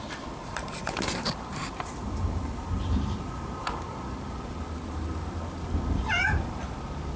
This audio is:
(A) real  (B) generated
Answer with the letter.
B